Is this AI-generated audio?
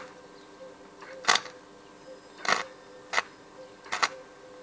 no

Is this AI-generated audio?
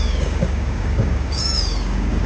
yes